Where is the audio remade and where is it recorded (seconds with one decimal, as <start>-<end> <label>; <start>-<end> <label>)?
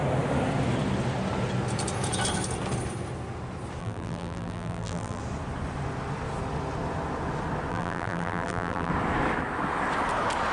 0.0-3.8 recorded; 3.8-5.2 remade; 5.2-7.7 recorded; 7.7-8.9 remade; 8.9-10.5 recorded